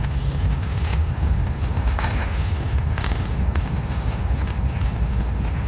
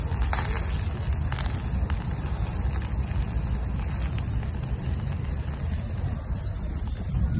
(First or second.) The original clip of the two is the second